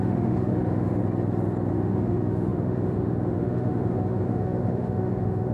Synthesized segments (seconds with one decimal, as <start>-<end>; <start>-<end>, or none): 0.0-1.0; 1.7-5.5

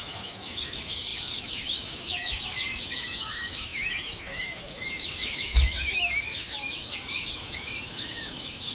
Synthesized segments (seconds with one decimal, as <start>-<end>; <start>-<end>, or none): 0.0-8.7

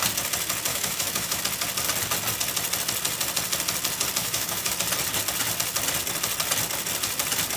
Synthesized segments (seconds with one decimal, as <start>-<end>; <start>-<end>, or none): 0.7-1.4; 4.2-4.7

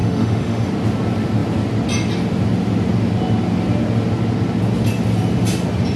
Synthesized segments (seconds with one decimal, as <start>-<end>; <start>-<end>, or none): 0.0-0.7

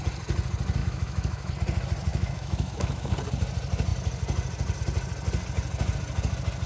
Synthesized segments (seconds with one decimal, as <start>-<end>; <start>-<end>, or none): 0.8-1.5; 2.1-3.1

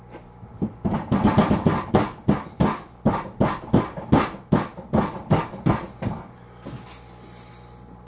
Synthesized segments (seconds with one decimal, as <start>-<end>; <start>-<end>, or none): none